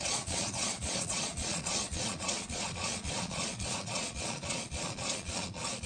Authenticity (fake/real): fake